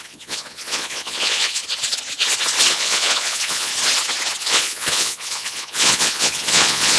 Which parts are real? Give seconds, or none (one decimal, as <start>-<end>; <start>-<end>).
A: 1.6-2.7; 3.7-4.4